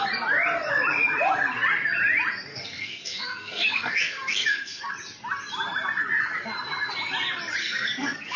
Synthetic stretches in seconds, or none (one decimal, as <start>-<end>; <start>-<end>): 2.5-4.9; 7.6-8.4